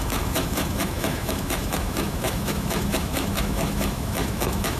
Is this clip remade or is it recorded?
remade